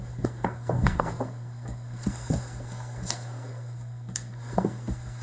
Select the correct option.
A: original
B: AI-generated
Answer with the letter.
B